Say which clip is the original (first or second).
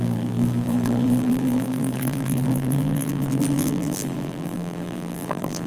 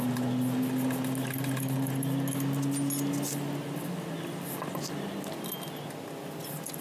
second